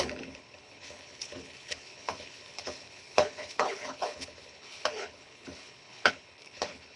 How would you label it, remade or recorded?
remade